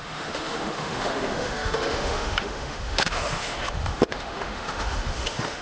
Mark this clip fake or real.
fake